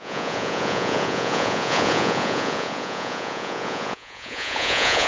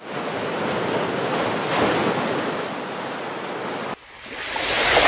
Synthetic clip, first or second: first